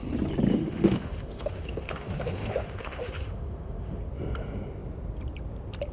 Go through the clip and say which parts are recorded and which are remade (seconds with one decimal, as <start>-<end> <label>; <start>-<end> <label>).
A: 0.0-0.5 recorded; 0.5-4.0 remade; 4.0-5.9 recorded